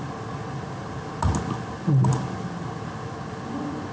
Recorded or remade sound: recorded